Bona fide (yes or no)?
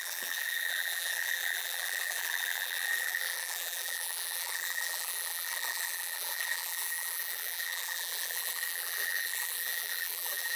no